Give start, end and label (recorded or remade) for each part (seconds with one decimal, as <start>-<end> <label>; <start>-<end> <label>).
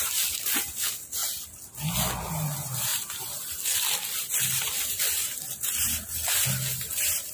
0.0-1.2 remade; 1.2-2.3 recorded; 2.3-7.3 remade